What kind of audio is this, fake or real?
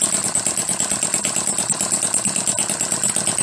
real